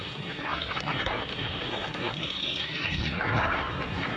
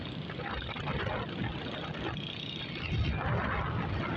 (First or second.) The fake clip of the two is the first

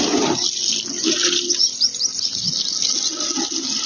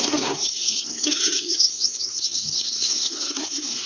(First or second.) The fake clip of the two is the second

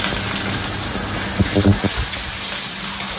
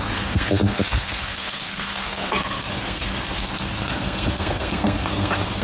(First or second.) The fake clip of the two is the second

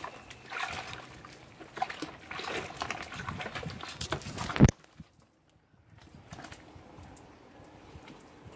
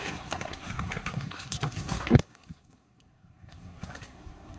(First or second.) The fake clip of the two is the second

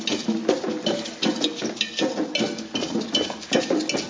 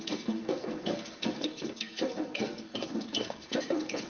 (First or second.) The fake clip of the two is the second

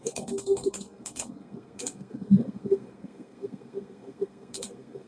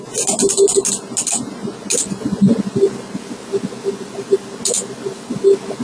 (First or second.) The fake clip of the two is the first